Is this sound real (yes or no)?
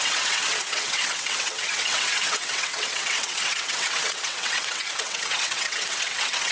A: no